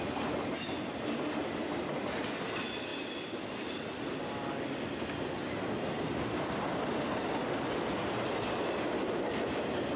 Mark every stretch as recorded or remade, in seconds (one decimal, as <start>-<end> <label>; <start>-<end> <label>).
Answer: 0.0-10.0 recorded

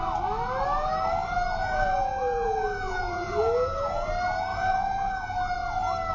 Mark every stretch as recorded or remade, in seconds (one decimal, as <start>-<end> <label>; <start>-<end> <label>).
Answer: 0.0-1.6 recorded; 1.6-4.1 remade; 4.1-4.5 recorded; 4.5-5.1 remade; 5.1-6.1 recorded

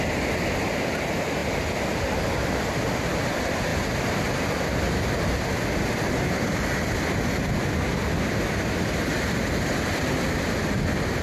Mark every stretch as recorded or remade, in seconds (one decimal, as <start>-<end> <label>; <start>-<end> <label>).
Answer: 0.0-11.2 recorded

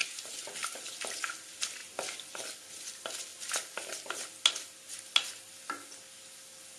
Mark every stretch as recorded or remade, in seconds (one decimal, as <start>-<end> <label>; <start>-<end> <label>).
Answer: 0.0-6.8 recorded

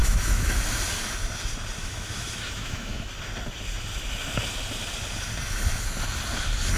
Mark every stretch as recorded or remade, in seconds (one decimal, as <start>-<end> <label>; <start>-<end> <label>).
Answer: 0.0-0.5 remade; 0.5-1.8 recorded; 1.8-3.1 remade; 3.1-6.8 recorded

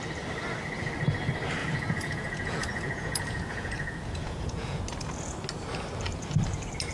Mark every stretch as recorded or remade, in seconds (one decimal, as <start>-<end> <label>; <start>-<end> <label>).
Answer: 0.0-1.6 recorded; 1.6-4.8 remade; 4.8-6.9 recorded